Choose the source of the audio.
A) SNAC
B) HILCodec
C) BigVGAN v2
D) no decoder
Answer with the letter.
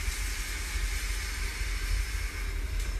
D